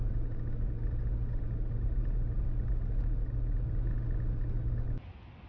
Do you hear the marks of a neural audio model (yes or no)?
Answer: no